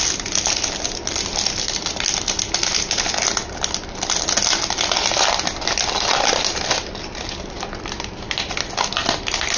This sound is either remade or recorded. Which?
recorded